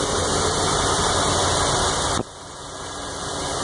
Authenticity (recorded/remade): recorded